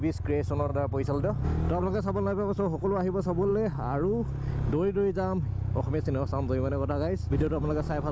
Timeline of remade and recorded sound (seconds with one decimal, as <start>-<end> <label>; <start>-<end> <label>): 0.0-8.1 recorded